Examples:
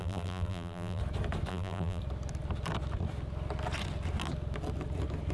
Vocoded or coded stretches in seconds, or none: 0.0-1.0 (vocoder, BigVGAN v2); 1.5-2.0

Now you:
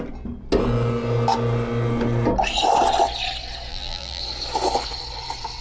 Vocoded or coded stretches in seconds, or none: 3.7-4.2 (vocoder, BigVGAN v2)

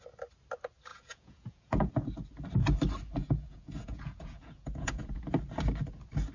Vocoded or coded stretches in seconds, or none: 0.9-1.9 (vocoder, Vocos); 3.2-5.2

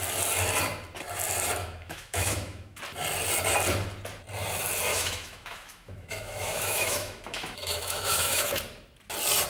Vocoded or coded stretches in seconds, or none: 1.6-2.8 (autoencoder, DAC-VAE); 4.9-8.6

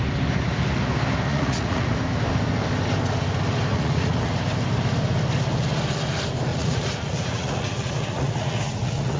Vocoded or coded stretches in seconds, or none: 1.3-1.9 (vocoder, Vocos); 3.7-4.3; 6.5-9.2

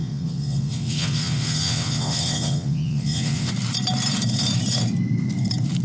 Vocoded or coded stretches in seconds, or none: 0.0-3.5 (vocoder, WaveNeXt)